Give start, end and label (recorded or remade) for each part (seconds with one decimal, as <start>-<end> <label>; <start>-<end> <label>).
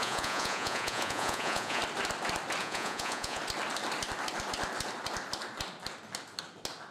0.0-1.8 remade; 1.8-2.6 recorded; 2.6-3.4 remade; 3.4-6.9 recorded